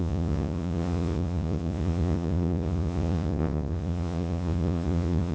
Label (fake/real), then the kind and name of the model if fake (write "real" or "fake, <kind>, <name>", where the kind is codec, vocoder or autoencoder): fake, vocoder, Vocos